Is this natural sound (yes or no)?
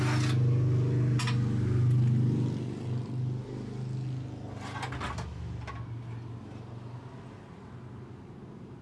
yes